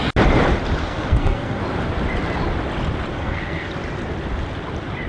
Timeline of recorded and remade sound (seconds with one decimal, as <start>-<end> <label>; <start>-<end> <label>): 0.0-0.8 recorded; 0.8-1.6 remade; 1.6-3.1 recorded; 3.1-3.7 remade; 3.7-5.1 recorded